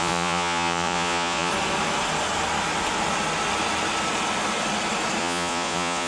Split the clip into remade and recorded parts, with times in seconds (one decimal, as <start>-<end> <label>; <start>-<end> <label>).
0.0-1.5 remade; 1.5-5.2 recorded; 5.2-6.1 remade